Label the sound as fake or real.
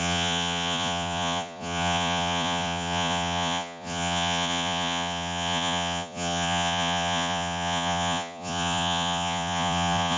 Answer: fake